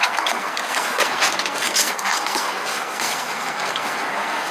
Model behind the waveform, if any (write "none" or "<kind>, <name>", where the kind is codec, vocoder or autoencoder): codec, SNAC